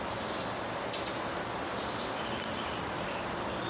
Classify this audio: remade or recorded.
recorded